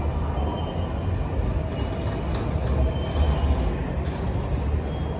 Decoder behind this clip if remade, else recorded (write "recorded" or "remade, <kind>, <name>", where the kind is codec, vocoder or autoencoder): recorded